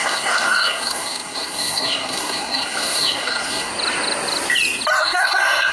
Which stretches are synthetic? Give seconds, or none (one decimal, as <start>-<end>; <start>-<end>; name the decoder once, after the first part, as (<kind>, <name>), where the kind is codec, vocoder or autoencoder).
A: 0.0-3.7 (codec, SNAC); 5.0-5.7